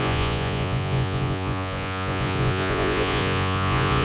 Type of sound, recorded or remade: remade